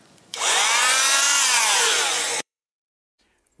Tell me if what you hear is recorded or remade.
remade